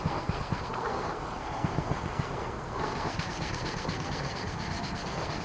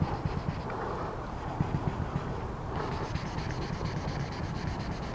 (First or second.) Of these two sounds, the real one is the second